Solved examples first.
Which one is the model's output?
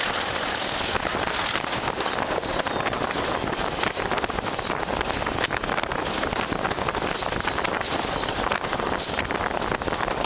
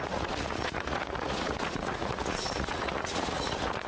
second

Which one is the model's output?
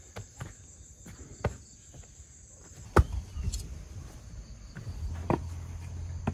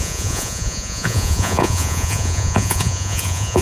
second